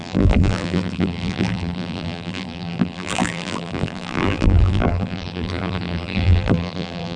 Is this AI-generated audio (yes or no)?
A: yes